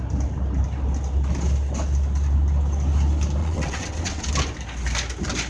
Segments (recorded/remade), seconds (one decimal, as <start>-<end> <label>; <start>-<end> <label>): 0.0-3.4 recorded; 3.4-4.3 remade; 4.3-5.5 recorded

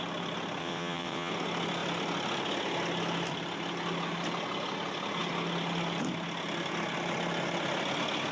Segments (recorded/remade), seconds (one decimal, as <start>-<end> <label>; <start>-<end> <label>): 0.0-0.6 recorded; 0.6-1.3 remade; 1.3-8.3 recorded

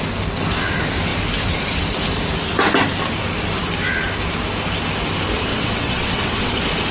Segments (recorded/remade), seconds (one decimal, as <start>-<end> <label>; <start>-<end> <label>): 0.0-5.5 recorded; 5.5-6.5 remade; 6.5-6.9 recorded

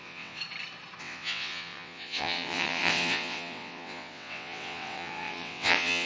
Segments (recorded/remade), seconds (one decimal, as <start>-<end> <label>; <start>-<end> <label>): 0.0-0.4 remade; 0.4-1.0 recorded; 1.0-6.1 remade

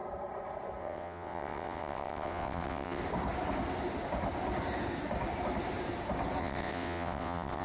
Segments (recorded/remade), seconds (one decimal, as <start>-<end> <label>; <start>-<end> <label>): 0.0-0.8 recorded; 0.8-3.0 remade; 3.0-6.4 recorded; 6.4-7.6 remade

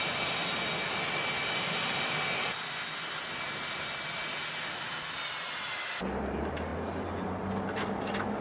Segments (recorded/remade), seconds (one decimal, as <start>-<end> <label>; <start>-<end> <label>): 0.0-8.4 recorded